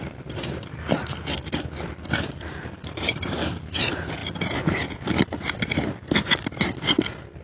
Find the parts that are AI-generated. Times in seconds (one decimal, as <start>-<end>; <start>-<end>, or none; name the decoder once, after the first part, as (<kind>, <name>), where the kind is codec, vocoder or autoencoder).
none